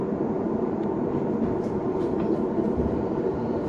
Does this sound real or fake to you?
fake